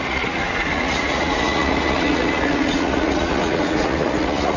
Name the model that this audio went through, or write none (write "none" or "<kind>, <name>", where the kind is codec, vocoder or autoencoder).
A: vocoder, Vocos